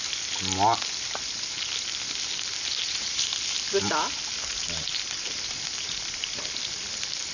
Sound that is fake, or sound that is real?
real